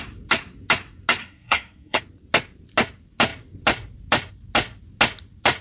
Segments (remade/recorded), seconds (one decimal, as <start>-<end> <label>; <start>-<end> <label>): 0.0-1.2 recorded; 1.2-2.0 remade; 2.0-5.6 recorded